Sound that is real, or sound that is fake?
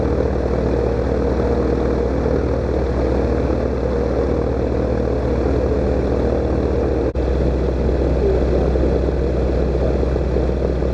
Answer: real